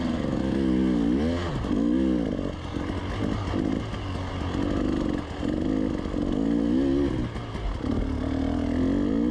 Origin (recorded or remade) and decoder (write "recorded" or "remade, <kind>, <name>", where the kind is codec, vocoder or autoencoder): recorded